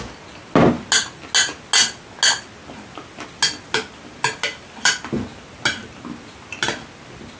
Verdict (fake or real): real